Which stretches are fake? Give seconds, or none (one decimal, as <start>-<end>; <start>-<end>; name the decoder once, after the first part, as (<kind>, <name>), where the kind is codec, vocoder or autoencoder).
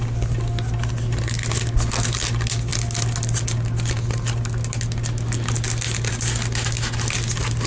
none